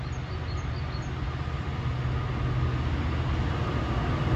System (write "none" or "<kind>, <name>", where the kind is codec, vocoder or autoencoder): none